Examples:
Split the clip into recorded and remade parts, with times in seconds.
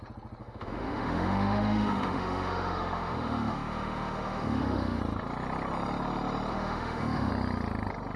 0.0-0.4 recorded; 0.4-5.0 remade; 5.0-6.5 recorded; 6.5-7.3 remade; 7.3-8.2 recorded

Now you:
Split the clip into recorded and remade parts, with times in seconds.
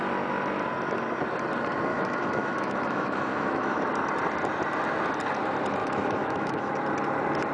0.0-1.9 recorded; 1.9-3.9 remade; 3.9-5.8 recorded; 5.8-6.7 remade; 6.7-7.5 recorded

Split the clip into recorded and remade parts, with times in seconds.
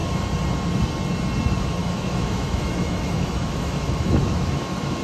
0.0-1.8 recorded; 1.8-5.0 remade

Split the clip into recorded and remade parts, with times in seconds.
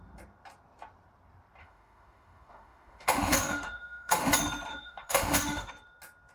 0.0-1.6 recorded; 1.6-4.3 remade; 4.3-4.7 recorded; 4.7-5.7 remade; 5.7-6.3 recorded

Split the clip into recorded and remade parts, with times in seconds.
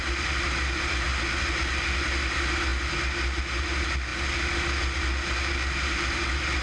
0.0-6.6 recorded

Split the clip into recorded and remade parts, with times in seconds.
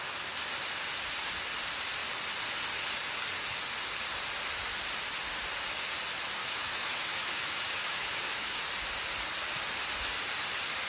0.0-6.4 recorded; 6.4-8.6 remade; 8.6-10.9 recorded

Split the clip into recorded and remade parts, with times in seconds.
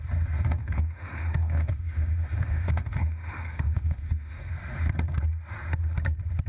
0.0-0.6 recorded; 0.6-4.5 remade; 4.5-6.5 recorded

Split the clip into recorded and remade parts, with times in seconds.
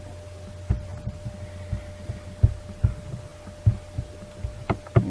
0.0-5.1 recorded